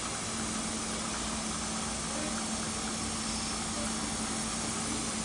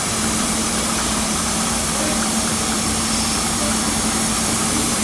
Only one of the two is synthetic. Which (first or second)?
second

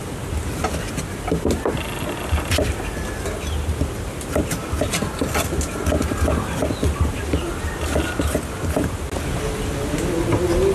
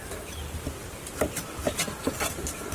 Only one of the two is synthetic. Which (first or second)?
second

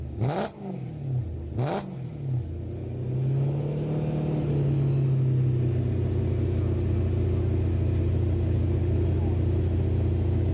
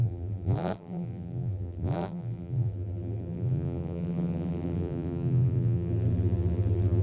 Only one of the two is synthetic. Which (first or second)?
second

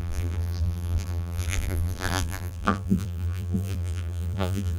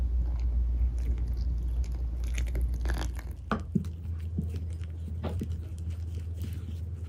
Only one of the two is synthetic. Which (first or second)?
first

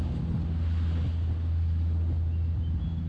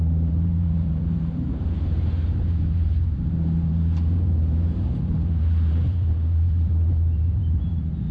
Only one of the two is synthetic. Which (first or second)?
second